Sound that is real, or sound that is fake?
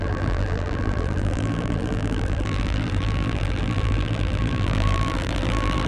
fake